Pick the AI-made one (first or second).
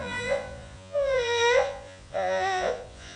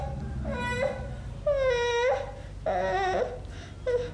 first